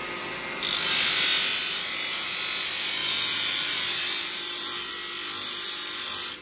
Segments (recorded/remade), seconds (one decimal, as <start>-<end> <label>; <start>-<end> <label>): 0.0-3.0 recorded; 3.0-4.9 remade; 4.9-6.4 recorded